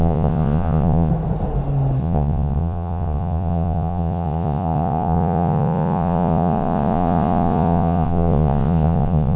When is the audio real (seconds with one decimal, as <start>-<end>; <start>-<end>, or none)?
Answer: 1.1-2.0